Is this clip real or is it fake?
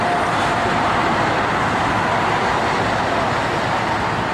real